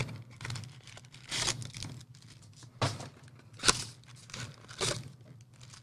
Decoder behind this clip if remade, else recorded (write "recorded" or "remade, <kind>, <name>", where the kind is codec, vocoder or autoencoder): recorded